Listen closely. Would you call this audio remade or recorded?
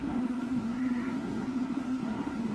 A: remade